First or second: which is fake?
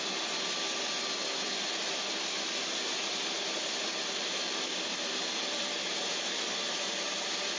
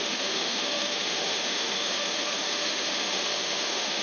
second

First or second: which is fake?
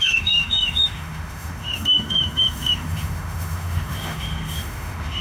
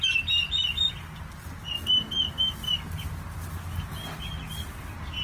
first